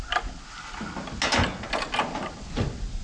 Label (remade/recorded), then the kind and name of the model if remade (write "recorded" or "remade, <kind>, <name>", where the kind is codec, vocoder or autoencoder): recorded